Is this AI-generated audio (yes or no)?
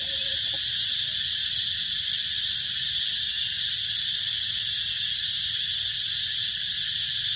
no